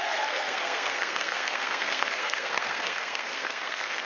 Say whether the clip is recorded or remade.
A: remade